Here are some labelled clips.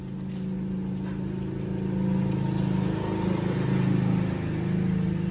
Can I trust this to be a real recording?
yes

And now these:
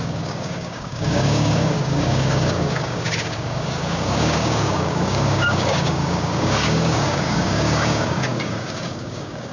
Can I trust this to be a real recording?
no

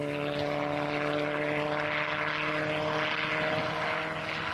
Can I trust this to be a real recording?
yes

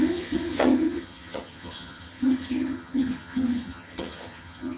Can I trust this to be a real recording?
no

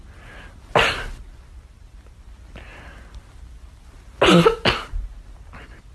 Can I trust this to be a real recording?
yes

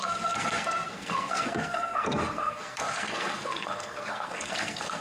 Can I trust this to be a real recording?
no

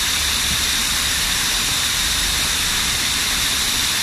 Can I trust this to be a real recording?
no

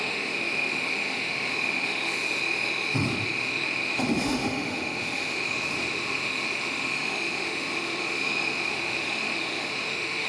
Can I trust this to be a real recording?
no